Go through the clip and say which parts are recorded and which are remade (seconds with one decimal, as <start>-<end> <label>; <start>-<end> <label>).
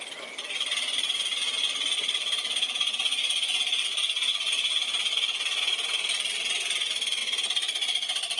0.0-8.4 remade